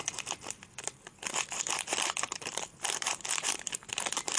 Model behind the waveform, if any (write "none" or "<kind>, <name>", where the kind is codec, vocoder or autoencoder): none